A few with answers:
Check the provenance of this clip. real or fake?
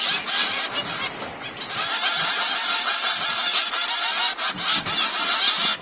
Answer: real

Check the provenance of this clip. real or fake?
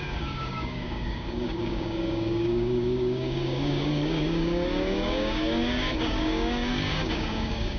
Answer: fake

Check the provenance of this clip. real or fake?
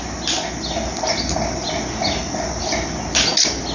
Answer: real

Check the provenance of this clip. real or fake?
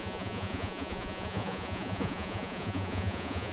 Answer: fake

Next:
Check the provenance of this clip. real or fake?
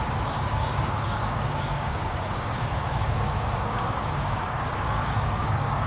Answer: fake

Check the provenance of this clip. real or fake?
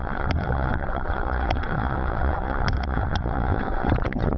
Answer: fake